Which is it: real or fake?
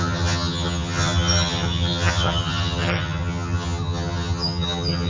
fake